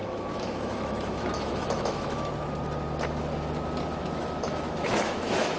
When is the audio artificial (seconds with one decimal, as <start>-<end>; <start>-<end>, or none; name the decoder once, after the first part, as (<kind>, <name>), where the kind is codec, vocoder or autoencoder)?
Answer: 0.0-2.3 (autoencoder, DAC-VAE); 3.9-5.6